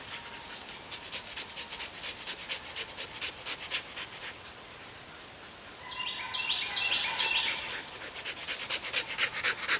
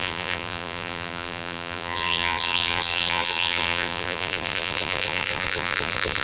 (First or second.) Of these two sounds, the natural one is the first